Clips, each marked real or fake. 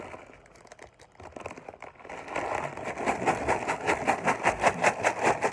real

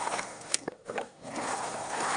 fake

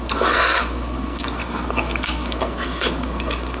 fake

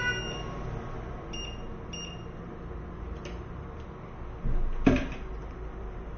real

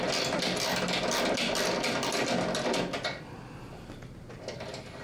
real